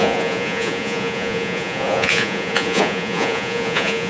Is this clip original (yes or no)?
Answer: no